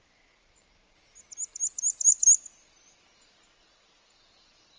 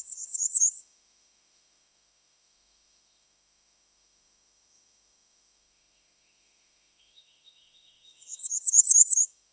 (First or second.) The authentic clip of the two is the first